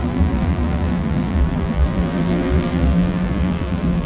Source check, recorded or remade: remade